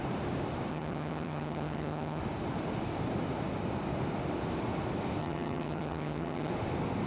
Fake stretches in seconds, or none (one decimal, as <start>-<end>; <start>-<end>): 0.7-2.2; 5.2-6.5